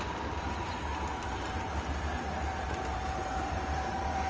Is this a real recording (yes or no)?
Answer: yes